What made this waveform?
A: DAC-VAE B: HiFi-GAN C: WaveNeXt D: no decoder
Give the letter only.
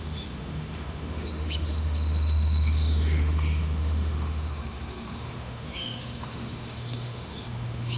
A